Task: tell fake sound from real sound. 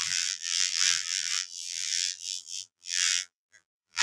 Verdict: fake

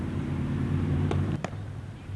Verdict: fake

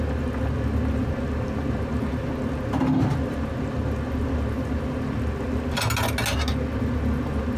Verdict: real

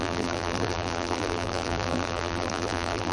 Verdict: fake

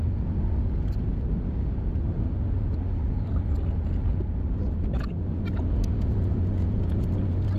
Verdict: real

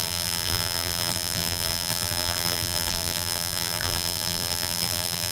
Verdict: fake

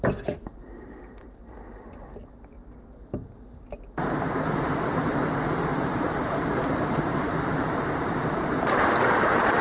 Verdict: fake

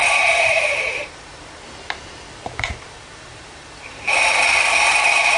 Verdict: fake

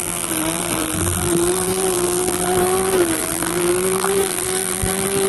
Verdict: fake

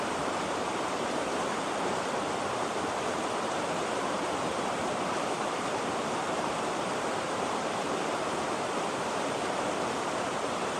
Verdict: fake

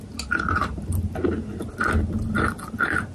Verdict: real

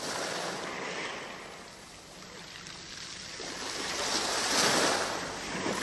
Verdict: real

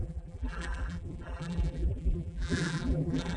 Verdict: fake